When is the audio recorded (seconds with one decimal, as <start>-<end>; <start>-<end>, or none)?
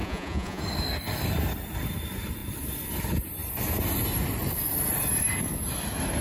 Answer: 0.6-6.2